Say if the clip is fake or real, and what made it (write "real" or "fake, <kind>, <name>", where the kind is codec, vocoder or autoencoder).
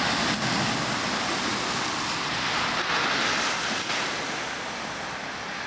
real